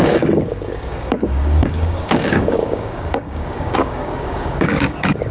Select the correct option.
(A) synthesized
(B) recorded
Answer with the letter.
A